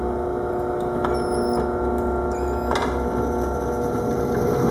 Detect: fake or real real